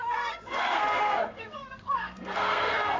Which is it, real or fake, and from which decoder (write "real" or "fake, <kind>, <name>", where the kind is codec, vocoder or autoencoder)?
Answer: fake, codec, SNAC